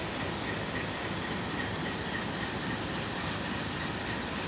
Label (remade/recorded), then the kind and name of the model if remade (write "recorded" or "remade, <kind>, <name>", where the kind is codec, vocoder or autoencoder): recorded